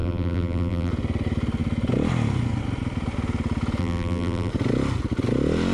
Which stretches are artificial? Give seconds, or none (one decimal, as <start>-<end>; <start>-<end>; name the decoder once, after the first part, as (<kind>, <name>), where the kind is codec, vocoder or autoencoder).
0.0-0.9 (vocoder, BigVGAN v2); 3.8-4.5